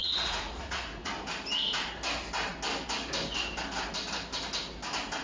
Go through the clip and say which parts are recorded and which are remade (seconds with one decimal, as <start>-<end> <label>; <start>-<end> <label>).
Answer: 0.0-1.1 remade; 1.1-5.2 recorded